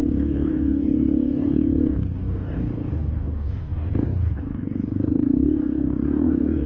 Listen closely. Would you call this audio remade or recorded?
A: remade